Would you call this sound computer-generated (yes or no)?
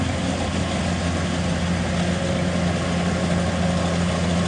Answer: no